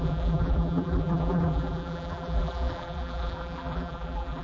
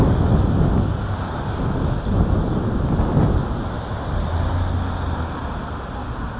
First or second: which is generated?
first